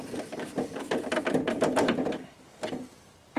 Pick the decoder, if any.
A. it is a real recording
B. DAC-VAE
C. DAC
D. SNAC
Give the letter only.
A